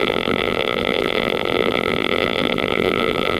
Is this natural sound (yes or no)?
no